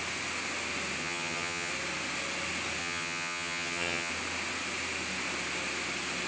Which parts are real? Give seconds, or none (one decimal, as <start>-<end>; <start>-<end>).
0.0-1.0; 1.7-2.8; 4.1-6.3

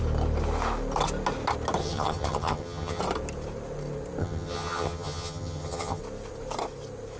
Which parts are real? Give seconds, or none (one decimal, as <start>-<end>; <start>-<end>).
0.0-1.8; 3.0-4.2; 6.0-7.2

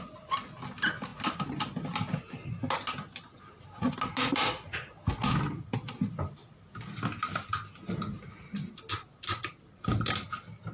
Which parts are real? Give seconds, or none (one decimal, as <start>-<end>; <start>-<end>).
0.0-10.7